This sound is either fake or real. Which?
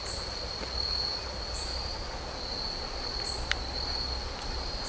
real